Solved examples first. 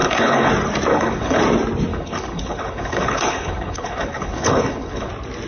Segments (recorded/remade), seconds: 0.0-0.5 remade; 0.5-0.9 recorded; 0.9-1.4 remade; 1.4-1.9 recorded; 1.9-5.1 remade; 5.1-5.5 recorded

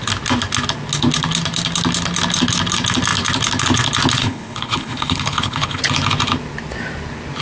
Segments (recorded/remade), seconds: 0.0-4.2 recorded; 4.2-5.8 remade; 5.8-7.4 recorded

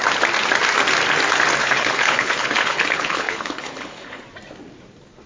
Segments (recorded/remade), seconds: 0.0-1.6 recorded; 1.6-4.2 remade; 4.2-5.3 recorded